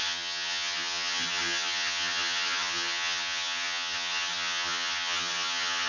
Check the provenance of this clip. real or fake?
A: fake